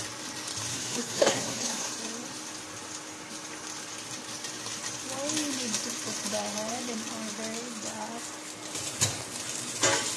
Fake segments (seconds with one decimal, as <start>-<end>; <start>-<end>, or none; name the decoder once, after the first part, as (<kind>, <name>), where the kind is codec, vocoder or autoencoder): 0.7-1.9 (codec, SNAC)